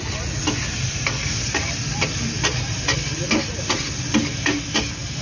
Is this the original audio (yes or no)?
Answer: yes